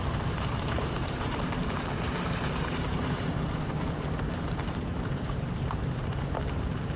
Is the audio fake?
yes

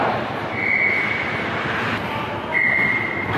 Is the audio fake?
no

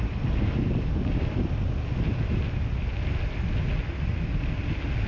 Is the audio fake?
no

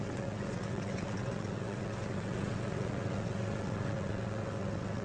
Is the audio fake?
yes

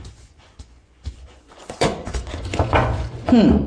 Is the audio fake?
yes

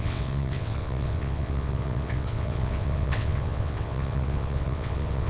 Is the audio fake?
yes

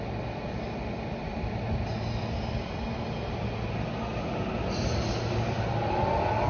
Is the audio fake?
no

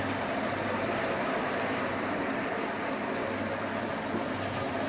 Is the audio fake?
no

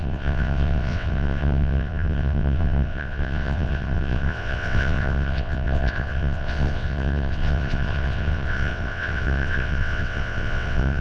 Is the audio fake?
yes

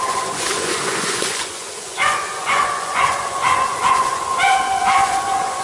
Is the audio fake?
yes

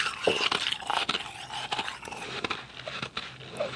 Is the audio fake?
no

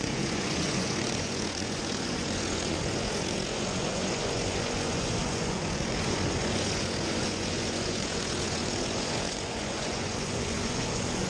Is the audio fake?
yes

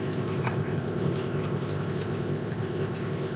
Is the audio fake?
yes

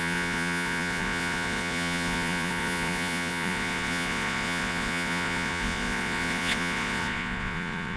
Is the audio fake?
yes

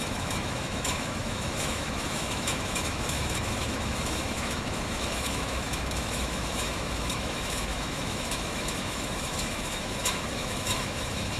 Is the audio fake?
yes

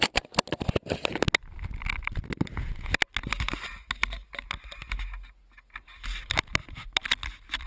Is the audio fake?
no